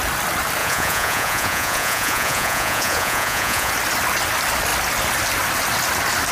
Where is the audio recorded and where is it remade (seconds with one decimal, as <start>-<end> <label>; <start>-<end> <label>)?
0.0-0.6 recorded; 0.6-3.7 remade; 3.7-6.3 recorded